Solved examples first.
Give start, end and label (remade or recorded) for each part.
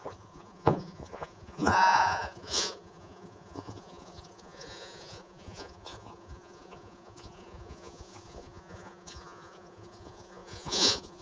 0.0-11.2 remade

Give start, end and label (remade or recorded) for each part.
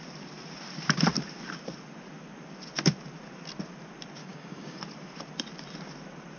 0.0-4.2 recorded; 4.2-4.8 remade; 4.8-6.4 recorded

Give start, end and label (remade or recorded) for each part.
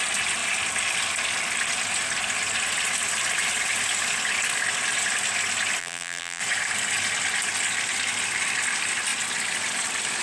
0.0-5.8 recorded; 5.8-6.4 remade; 6.4-10.2 recorded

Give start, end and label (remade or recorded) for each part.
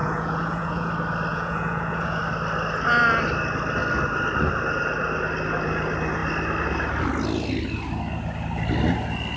0.0-0.9 remade; 0.9-1.3 recorded; 1.3-2.2 remade; 2.2-9.4 recorded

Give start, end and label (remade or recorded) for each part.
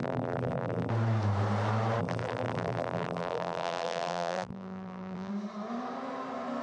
0.0-0.9 remade; 0.9-2.0 recorded; 2.0-5.3 remade; 5.3-6.6 recorded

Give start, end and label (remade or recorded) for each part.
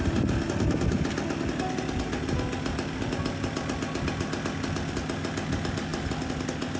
0.0-6.8 recorded